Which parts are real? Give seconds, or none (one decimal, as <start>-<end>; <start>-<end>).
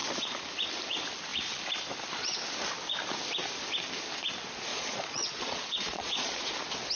0.0-4.7; 6.5-7.0